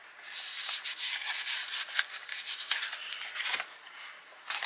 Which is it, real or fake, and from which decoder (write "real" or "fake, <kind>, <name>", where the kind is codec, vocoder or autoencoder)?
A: real